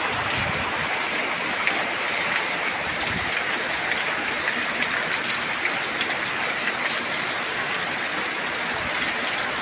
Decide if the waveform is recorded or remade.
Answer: recorded